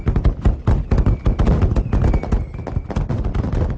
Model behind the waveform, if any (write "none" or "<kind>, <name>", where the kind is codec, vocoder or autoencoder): none